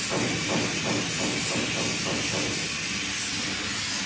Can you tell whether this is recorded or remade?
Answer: recorded